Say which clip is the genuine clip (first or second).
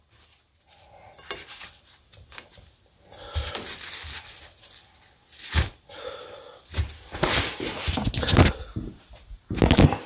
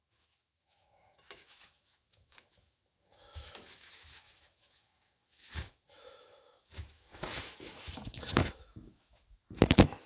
first